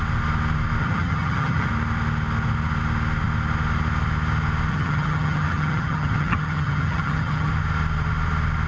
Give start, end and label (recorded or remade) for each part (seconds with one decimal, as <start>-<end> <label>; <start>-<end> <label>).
0.0-0.8 recorded; 0.8-1.7 remade; 1.7-4.7 recorded; 4.7-7.5 remade; 7.5-8.7 recorded